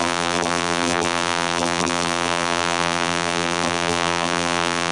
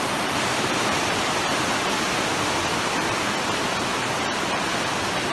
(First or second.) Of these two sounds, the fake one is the first